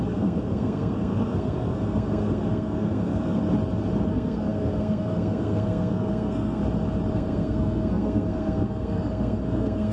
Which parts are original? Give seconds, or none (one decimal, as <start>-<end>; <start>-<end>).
3.4-4.1; 6.6-7.1